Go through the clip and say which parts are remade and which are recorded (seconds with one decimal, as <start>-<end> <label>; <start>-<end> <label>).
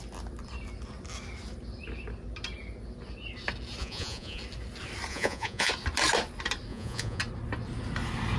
0.0-3.8 recorded; 3.8-4.4 remade; 4.4-5.1 recorded; 5.1-5.7 remade; 5.7-6.7 recorded; 6.7-7.2 remade; 7.2-8.4 recorded